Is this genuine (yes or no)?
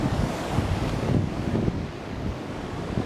no